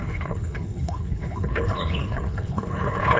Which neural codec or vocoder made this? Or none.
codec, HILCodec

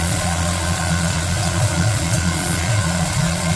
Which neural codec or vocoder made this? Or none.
vocoder, Vocos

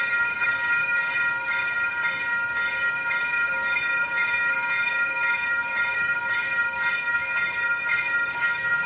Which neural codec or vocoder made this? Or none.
codec, DAC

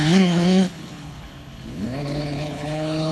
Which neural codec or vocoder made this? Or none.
codec, HILCodec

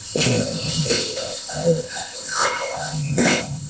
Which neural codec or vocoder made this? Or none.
codec, ZipCodec